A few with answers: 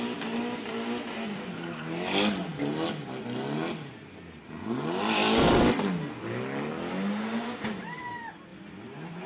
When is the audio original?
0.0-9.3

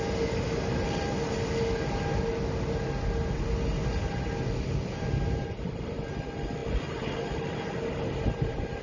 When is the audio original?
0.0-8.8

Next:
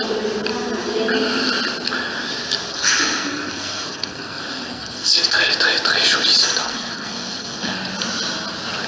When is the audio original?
0.0-2.7; 5.5-6.6; 7.8-8.9

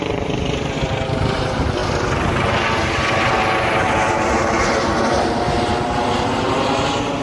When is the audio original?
0.0-7.2